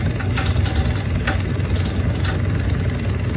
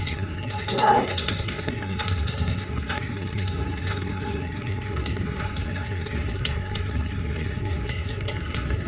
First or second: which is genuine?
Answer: first